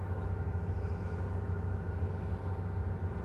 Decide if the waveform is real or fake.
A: fake